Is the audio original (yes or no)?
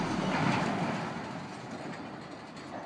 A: yes